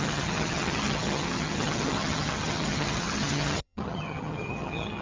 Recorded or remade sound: remade